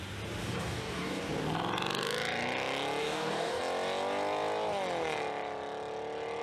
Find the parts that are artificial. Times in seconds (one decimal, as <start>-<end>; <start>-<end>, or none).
0.4-1.3; 3.0-3.6

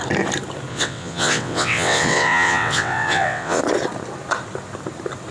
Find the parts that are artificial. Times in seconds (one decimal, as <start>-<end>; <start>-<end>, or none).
0.7-3.6

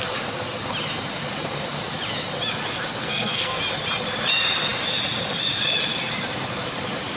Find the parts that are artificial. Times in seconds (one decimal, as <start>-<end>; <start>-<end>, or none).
3.0-3.6

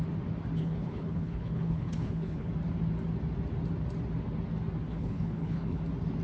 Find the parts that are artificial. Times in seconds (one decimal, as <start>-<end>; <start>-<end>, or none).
0.6-2.5; 4.9-5.8

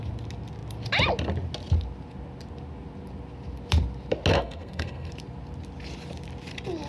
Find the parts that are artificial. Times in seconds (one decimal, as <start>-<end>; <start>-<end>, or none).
4.3-5.1